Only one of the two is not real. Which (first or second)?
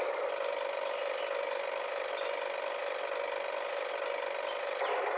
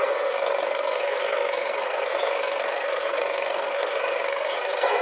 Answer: second